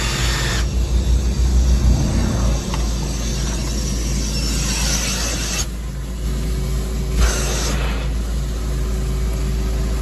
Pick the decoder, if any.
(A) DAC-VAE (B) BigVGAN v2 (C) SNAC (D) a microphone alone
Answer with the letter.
D